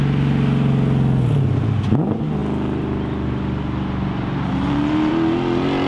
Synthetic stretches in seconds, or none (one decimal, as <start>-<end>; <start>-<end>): none